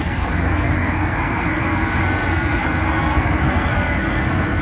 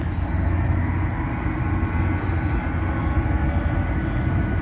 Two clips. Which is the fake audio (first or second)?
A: first